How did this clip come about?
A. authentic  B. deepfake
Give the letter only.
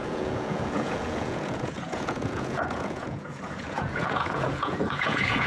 B